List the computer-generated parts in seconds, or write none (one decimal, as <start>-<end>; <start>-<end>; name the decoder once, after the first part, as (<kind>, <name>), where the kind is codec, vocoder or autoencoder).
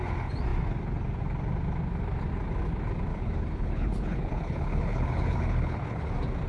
3.1-6.1 (codec, HILCodec)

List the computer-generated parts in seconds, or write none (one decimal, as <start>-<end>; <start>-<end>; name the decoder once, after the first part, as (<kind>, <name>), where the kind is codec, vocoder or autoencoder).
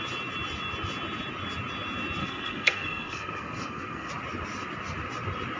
2.2-4.1 (codec, SNAC)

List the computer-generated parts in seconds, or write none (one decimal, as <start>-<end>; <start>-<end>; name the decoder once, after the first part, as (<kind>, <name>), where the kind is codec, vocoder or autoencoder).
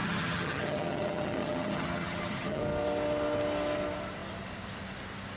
0.0-2.6 (vocoder, HiFi-GAN)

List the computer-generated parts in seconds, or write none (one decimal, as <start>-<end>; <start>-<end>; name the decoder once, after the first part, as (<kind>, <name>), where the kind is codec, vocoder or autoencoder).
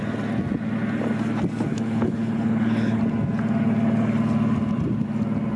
1.7-3.0 (codec, HILCodec)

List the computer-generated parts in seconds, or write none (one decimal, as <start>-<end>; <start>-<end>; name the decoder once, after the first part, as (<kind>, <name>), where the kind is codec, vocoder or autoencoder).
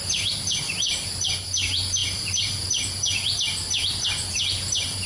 none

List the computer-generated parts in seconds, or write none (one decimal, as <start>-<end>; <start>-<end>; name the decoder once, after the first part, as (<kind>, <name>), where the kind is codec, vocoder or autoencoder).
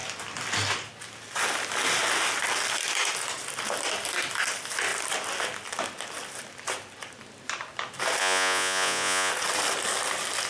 8.2-9.3 (vocoder, Vocos)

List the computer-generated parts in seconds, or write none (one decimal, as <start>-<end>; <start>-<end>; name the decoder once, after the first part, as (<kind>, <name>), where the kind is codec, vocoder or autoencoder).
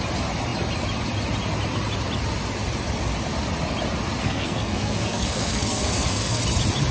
4.2-6.4 (codec, SNAC)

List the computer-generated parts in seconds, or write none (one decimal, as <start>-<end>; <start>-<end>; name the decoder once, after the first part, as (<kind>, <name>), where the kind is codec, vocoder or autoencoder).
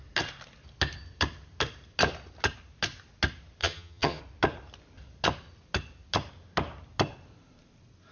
3.6-4.2 (vocoder, HiFi-GAN)